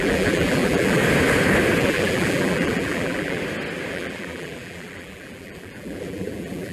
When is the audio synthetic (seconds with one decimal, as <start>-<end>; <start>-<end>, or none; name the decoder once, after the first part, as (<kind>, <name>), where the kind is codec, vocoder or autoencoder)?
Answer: 0.0-1.0 (vocoder, BigVGAN v2); 1.8-3.4; 3.9-6.7